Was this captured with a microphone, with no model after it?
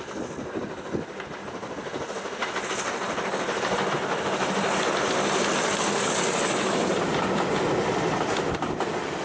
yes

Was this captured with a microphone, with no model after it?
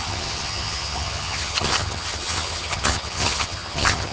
no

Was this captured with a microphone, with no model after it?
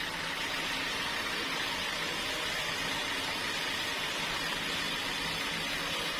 yes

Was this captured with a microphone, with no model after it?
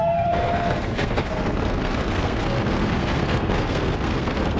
no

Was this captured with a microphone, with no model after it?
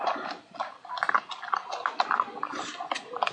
yes